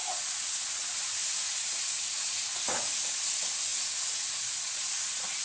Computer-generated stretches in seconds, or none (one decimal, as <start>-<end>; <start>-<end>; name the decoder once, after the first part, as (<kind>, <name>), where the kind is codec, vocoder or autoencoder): 0.0-5.4 (vocoder, Vocos)